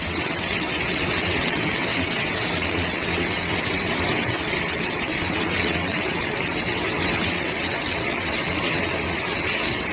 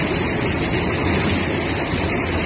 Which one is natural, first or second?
second